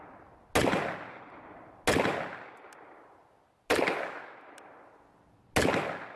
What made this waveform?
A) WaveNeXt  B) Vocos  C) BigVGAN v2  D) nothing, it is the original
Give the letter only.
D